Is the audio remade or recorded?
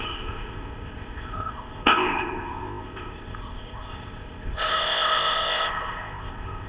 remade